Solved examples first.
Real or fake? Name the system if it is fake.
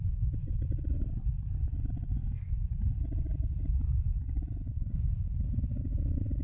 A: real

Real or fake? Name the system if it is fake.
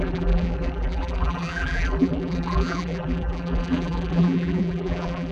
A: fake, vocoder, BigVGAN v2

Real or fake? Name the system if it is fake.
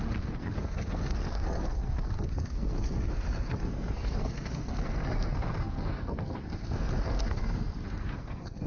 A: fake, codec, SNAC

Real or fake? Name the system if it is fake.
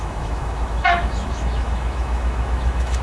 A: fake, autoencoder, DAC-VAE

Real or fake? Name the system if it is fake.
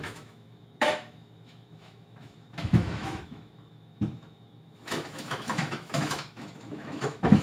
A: fake, autoencoder, DAC-VAE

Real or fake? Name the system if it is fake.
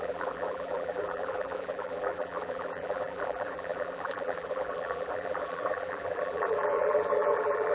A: fake, vocoder, BigVGAN v2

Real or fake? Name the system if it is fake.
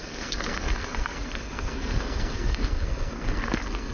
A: fake, codec, SNAC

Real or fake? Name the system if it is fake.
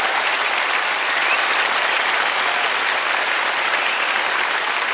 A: real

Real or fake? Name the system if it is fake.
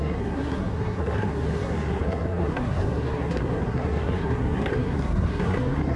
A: fake, codec, SNAC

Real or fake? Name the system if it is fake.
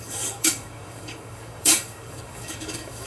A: fake, codec, DAC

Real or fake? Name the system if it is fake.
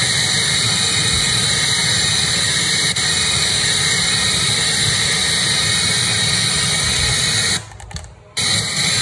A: real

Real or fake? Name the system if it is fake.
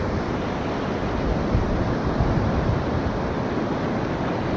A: real